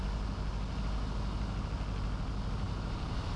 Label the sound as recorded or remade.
recorded